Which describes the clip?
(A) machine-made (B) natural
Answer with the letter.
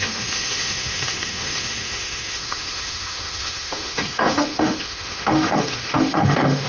A